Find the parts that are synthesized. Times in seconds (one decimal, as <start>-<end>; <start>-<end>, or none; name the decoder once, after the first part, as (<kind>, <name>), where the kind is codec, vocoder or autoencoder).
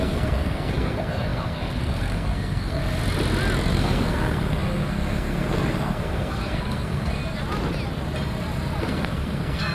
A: 0.0-2.8 (codec, SNAC); 3.7-7.2; 8.8-9.7